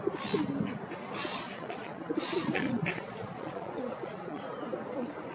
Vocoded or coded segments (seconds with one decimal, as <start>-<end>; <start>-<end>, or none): 1.2-4.4